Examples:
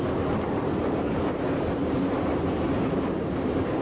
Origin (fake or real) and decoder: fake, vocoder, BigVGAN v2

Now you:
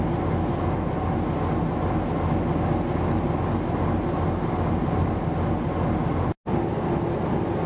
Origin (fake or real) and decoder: real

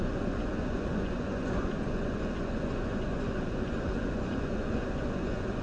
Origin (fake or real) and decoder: fake, vocoder, Vocos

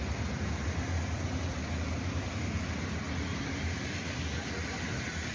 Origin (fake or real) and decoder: real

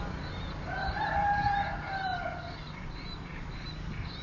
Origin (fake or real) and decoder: real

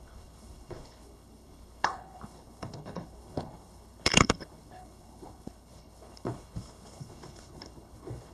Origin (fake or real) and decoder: fake, codec, HILCodec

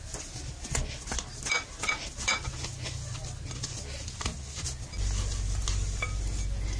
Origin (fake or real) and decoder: real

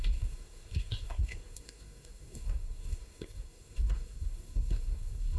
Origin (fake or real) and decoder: fake, codec, SNAC